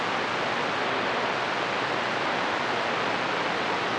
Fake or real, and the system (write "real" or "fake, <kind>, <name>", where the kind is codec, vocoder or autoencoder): real